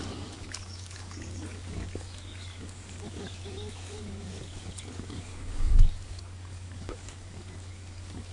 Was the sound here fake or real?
fake